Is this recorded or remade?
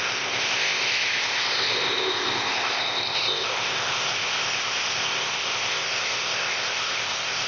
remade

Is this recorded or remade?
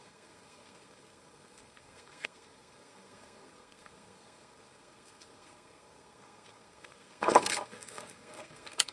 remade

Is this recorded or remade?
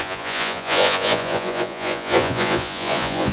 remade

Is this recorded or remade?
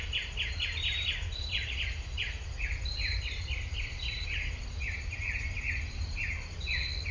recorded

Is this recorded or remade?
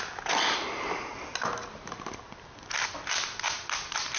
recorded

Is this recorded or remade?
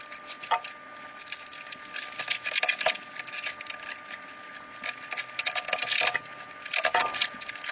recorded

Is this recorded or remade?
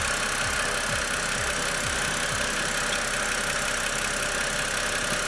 recorded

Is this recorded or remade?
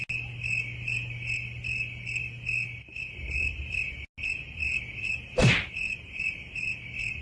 recorded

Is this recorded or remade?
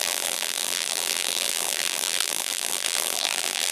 remade